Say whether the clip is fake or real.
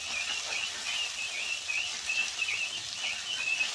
real